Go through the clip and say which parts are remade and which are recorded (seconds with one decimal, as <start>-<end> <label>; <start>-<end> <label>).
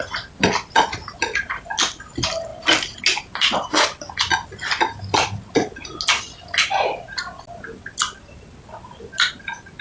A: 0.0-9.8 recorded